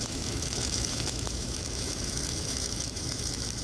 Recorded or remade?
remade